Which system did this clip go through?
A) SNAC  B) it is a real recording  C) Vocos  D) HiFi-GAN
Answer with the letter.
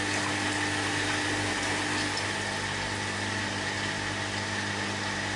B